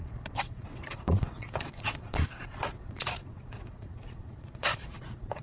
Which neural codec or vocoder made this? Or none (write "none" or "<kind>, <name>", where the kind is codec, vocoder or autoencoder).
vocoder, Vocos